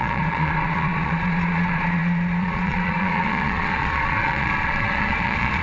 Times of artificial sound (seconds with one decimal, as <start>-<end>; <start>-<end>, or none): 0.0-5.6